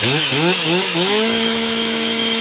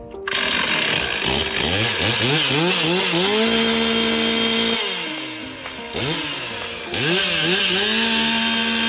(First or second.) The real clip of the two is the second